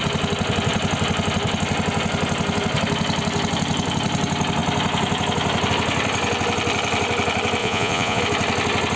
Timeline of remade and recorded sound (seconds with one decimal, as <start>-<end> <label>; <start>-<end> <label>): 0.0-7.6 recorded; 7.6-8.2 remade; 8.2-9.0 recorded